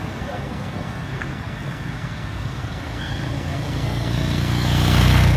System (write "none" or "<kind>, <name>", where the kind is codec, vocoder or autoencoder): codec, SNAC